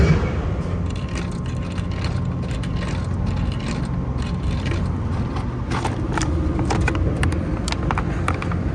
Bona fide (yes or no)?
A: yes